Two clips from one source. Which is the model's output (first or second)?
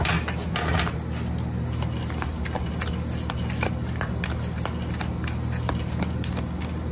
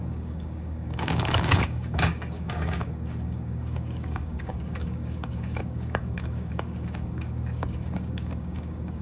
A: second